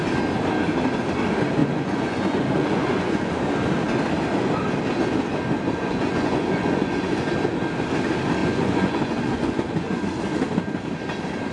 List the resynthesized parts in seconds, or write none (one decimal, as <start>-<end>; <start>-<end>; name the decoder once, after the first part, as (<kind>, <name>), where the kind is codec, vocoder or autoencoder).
1.6-3.3 (vocoder, Vocos); 5.8-7.3; 8.4-10.0